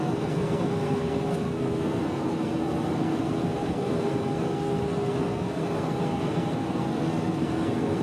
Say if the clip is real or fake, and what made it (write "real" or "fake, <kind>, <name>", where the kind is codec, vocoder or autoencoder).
fake, codec, SNAC